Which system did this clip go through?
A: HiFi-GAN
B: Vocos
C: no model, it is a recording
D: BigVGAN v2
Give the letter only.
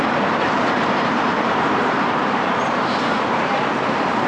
D